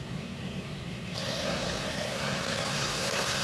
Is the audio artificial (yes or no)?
yes